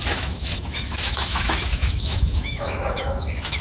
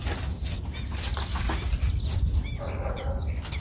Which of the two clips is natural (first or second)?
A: second